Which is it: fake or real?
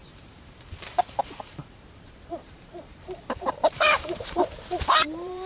fake